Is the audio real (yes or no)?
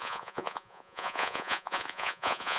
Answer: no